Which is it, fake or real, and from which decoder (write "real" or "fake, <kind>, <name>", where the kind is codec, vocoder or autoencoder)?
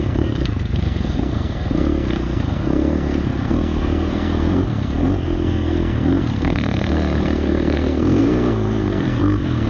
fake, codec, SNAC